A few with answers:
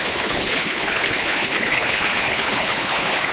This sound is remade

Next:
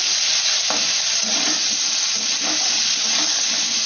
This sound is recorded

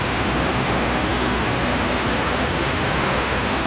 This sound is remade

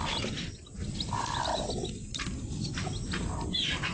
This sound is recorded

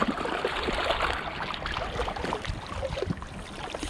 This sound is recorded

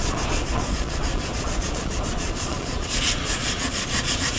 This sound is remade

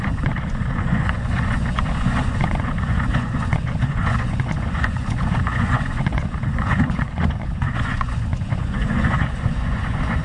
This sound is remade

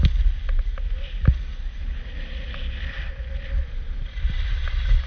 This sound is recorded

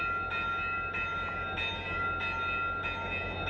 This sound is recorded